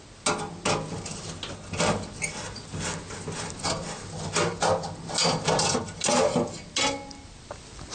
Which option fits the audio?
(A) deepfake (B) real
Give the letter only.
B